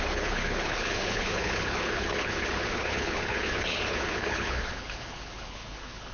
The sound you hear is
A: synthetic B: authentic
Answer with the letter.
A